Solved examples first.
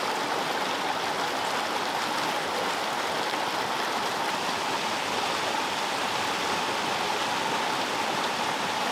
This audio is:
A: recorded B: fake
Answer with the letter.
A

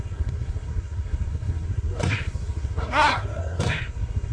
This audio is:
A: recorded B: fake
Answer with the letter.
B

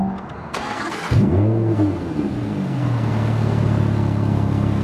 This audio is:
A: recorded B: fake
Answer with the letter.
B